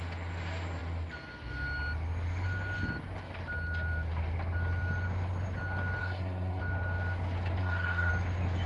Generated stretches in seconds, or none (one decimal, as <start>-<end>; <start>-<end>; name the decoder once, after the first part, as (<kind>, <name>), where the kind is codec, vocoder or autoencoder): 6.0-6.6 (codec, SNAC); 7.6-8.1